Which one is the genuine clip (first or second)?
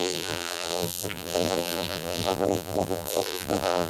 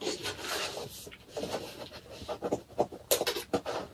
second